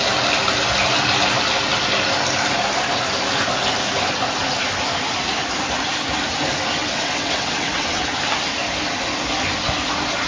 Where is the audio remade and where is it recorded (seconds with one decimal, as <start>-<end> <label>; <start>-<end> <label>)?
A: 0.0-6.8 recorded; 6.8-8.0 remade; 8.0-10.3 recorded